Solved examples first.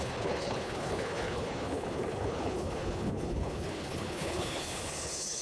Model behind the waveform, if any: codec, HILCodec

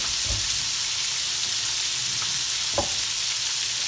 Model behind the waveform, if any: none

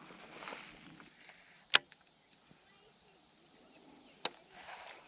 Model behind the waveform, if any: none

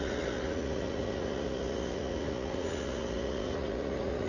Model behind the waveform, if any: vocoder, Vocos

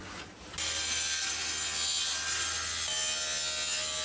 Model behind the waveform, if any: none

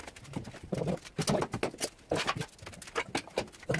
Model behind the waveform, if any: none